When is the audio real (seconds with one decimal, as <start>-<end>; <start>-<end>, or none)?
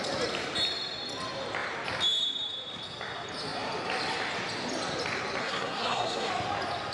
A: 0.0-5.4; 6.3-6.9